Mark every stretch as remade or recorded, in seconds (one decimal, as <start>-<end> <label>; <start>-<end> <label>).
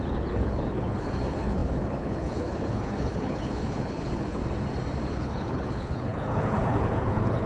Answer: 0.0-4.4 remade; 4.4-5.1 recorded; 5.1-7.5 remade